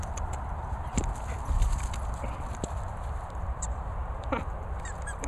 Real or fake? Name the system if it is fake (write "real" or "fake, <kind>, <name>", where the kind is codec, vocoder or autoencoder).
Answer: fake, vocoder, BigVGAN v2